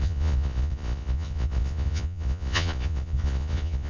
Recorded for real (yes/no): no